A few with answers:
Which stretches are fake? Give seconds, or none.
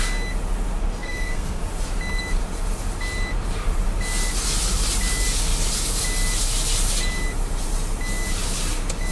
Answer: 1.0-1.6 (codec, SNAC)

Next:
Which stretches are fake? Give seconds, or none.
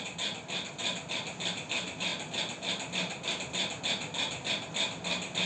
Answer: none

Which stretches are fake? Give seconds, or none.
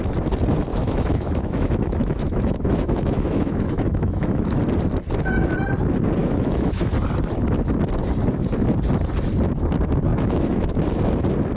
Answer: 0.7-4.6 (autoencoder, DAC-VAE); 6.2-6.9; 10.1-10.6